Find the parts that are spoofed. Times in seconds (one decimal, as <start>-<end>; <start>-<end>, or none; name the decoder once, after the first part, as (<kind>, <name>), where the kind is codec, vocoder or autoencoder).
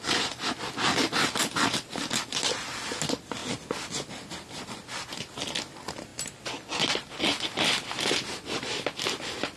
none